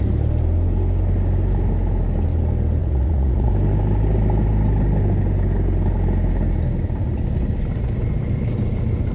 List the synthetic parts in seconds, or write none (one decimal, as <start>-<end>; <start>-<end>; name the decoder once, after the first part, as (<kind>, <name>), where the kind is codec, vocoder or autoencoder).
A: 2.8-3.5 (vocoder, Vocos)